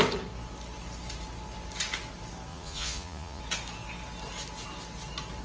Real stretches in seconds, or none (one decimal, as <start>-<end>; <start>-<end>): 0.0-2.5; 3.4-5.4